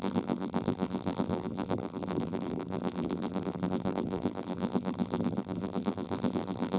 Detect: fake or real fake